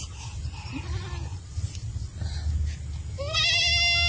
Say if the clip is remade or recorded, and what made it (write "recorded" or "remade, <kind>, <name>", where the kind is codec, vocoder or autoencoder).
recorded